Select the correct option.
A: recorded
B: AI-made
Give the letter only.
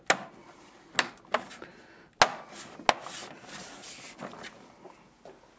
A